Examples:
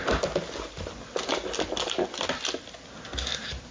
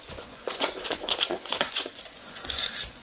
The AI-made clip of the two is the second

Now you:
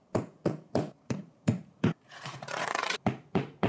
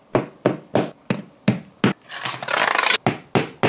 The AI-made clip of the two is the first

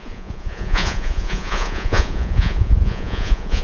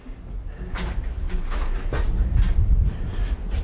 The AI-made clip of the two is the first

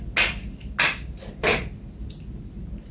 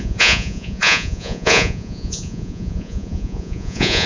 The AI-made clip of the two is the second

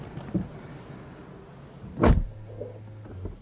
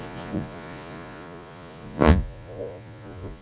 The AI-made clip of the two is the second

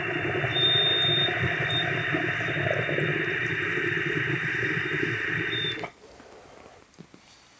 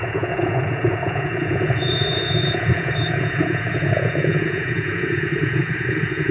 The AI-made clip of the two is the second